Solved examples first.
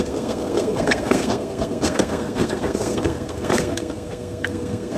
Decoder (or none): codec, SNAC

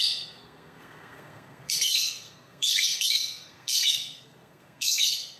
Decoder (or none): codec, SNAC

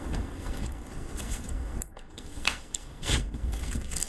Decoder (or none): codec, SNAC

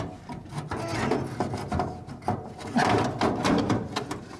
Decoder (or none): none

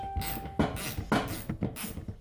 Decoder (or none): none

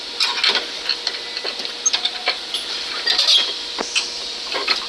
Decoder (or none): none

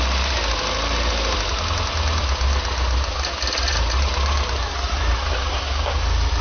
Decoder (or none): none